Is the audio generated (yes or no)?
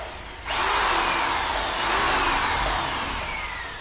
no